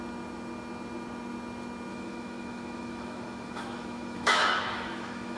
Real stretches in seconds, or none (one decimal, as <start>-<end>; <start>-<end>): 0.0-1.9